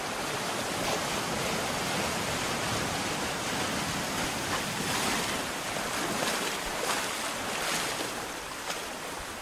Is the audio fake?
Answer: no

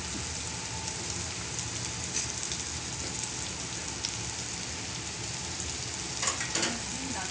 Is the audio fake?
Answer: no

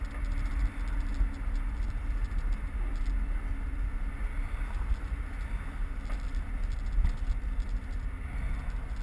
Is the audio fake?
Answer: no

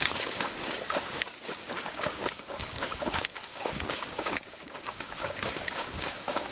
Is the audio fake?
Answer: yes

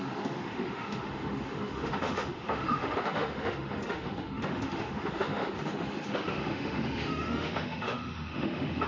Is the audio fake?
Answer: yes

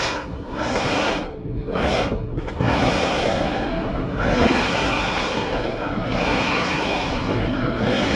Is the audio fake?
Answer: yes